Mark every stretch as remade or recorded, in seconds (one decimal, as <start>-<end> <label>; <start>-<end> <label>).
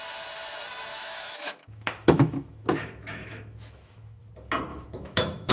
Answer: 0.0-0.9 recorded; 0.9-4.2 remade; 4.2-4.7 recorded; 4.7-5.5 remade